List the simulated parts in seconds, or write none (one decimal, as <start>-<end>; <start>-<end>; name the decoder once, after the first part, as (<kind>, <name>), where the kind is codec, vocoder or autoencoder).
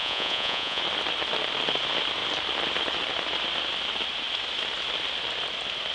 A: 0.0-0.8 (vocoder, Vocos)